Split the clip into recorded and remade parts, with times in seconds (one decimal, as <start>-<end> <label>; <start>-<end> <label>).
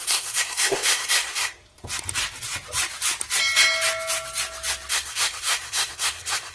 0.0-1.6 remade; 1.6-4.9 recorded; 4.9-6.5 remade